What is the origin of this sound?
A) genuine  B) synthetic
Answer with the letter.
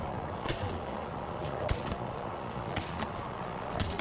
B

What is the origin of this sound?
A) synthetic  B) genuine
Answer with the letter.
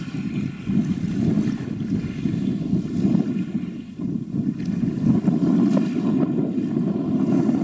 B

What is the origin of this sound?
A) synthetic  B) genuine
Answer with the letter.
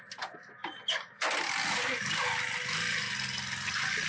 B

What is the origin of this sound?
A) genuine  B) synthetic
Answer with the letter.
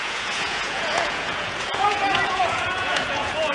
B